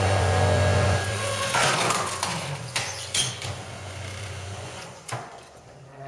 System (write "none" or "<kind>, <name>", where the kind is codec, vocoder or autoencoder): vocoder, Vocos